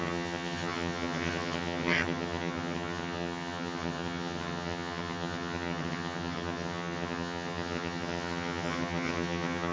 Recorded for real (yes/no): no